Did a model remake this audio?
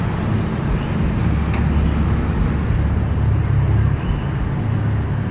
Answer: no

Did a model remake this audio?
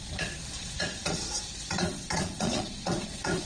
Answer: yes